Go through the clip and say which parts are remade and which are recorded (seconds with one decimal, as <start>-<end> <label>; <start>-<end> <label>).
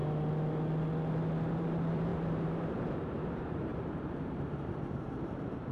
0.0-1.5 recorded; 1.5-5.7 remade